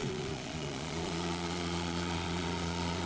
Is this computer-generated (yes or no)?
yes